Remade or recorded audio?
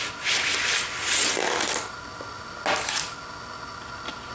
recorded